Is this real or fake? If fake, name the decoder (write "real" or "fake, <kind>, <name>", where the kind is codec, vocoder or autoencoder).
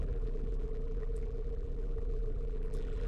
fake, vocoder, BigVGAN v2